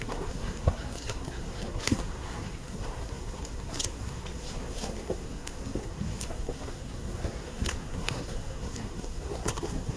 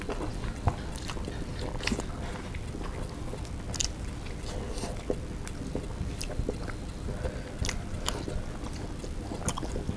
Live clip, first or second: second